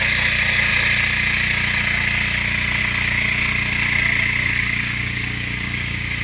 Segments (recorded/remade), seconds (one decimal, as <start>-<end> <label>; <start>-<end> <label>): 0.0-4.4 recorded; 4.4-6.2 remade